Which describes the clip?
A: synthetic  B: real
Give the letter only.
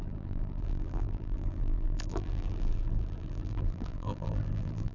A